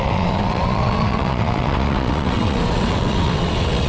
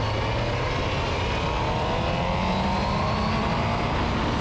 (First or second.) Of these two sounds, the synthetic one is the first